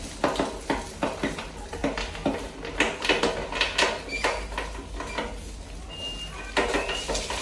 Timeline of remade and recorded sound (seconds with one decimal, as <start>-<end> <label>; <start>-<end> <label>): 0.0-7.4 recorded